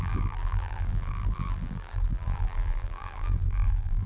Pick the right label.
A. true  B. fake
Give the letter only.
B